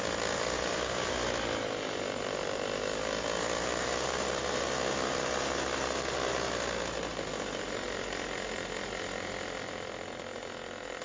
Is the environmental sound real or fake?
real